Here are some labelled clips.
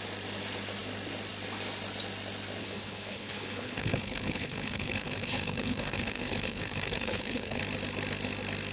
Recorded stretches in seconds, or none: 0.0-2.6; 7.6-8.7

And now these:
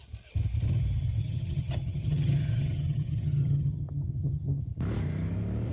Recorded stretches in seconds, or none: 0.0-1.2; 4.6-5.7

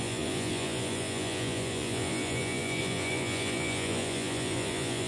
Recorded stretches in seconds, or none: none

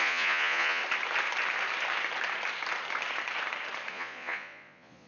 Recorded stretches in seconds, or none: 0.8-3.9

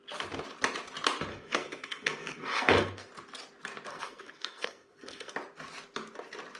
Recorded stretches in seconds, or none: 0.0-1.3; 3.1-3.9; 5.3-6.6

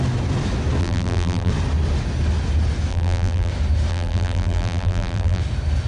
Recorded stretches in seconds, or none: 0.0-0.8; 1.5-2.9; 3.5-3.9; 5.4-5.9